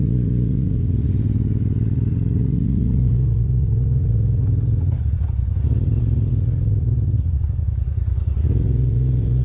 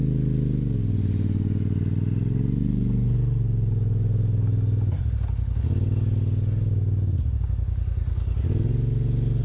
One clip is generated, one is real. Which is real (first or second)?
second